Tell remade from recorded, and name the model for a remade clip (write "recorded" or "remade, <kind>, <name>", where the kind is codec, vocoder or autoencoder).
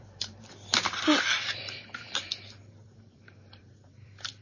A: remade, vocoder, BigVGAN v2